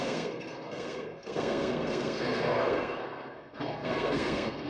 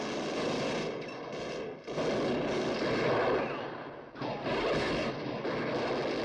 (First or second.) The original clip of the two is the second